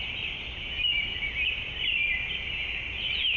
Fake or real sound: real